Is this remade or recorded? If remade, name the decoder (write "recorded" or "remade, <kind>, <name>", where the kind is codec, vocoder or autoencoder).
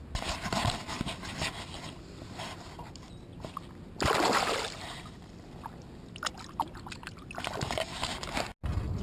recorded